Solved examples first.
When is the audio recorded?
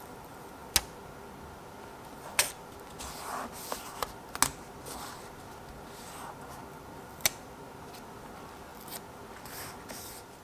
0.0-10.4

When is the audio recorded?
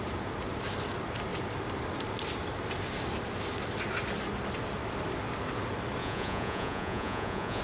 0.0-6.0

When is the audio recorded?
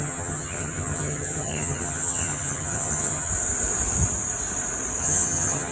3.3-5.0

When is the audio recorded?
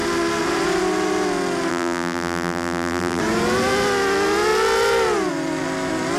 0.0-1.7; 3.2-6.2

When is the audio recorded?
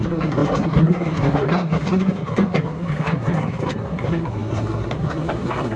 none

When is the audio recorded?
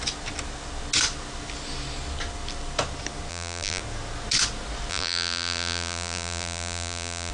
0.0-3.3; 3.8-4.9